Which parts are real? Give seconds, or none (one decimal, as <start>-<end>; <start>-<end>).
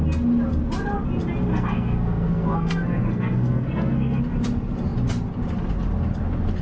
0.0-1.5; 4.2-6.6